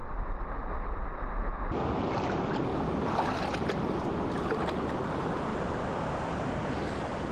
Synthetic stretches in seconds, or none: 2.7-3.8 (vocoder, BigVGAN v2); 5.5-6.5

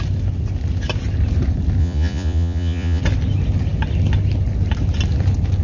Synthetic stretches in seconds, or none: 1.8-3.0 (vocoder, Vocos)